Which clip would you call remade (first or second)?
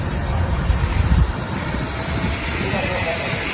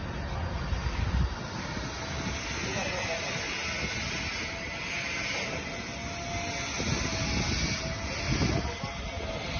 first